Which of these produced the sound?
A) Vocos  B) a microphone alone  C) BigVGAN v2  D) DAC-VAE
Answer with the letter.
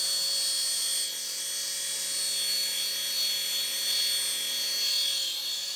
B